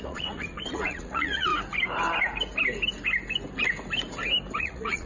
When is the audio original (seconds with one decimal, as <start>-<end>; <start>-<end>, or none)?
1.5-4.6